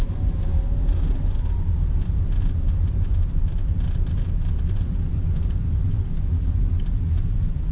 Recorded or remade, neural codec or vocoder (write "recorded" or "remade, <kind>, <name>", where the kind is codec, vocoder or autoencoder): remade, vocoder, BigVGAN v2